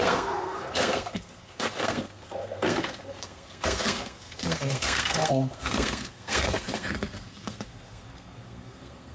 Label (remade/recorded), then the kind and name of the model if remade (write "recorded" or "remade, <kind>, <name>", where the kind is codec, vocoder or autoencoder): remade, codec, SNAC